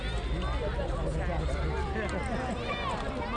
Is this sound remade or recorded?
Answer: recorded